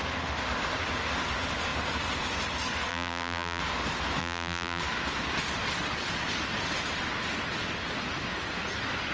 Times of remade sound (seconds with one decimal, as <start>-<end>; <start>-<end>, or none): 2.9-3.6; 4.2-4.8

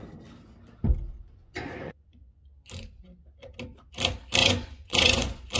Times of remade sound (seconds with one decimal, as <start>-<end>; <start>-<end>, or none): 1.4-2.4; 4.4-5.6